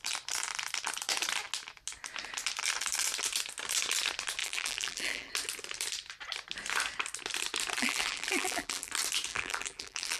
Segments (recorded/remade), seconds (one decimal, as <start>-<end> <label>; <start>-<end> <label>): 0.0-4.4 recorded; 4.4-5.3 remade; 5.3-7.8 recorded; 7.8-8.9 remade; 8.9-9.3 recorded; 9.3-10.2 remade